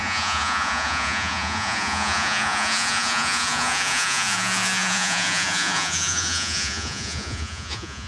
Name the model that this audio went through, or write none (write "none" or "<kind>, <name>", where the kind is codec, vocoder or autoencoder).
vocoder, Vocos